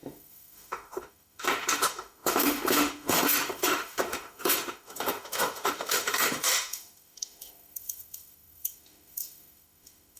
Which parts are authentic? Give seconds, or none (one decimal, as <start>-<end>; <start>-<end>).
none